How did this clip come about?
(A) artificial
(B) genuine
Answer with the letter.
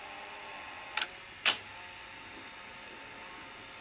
B